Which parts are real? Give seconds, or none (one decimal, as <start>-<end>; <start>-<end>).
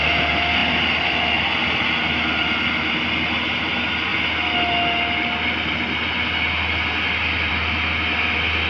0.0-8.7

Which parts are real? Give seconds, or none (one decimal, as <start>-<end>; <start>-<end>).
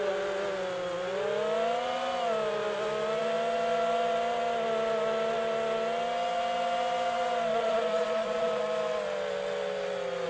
0.0-7.5; 8.6-10.3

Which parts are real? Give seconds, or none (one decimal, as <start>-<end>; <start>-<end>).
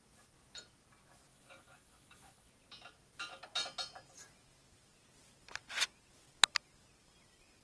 0.0-1.3; 2.5-7.6